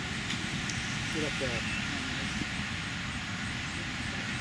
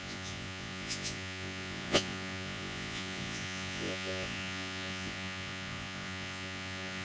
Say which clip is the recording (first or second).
first